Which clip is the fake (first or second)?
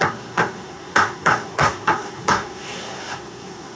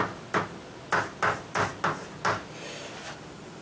first